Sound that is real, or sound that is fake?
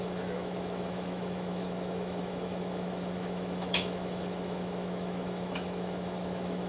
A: fake